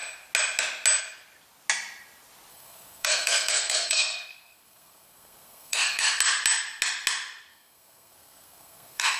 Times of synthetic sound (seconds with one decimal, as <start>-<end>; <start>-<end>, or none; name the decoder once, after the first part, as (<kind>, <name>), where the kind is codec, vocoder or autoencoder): 2.5-6.2 (codec, SNAC); 7.5-9.2